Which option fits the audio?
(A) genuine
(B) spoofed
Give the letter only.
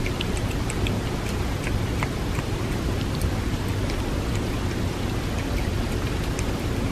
A